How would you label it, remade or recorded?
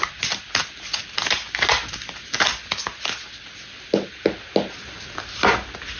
recorded